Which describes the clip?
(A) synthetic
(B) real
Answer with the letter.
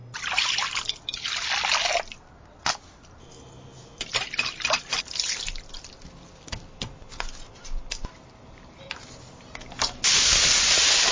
B